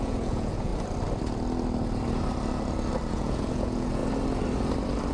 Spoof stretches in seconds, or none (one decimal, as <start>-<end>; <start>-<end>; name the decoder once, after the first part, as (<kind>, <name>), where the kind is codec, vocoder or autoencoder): 0.0-0.7 (vocoder, Vocos); 3.1-4.0